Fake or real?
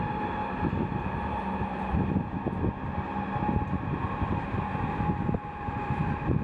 real